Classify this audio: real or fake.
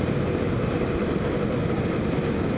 fake